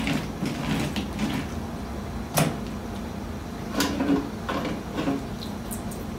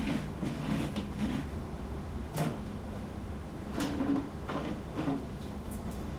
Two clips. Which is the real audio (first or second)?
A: first